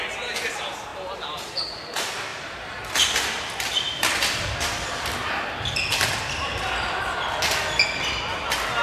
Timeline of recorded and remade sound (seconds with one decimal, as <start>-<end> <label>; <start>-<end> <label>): 0.0-2.3 recorded; 2.3-5.3 remade; 5.3-8.8 recorded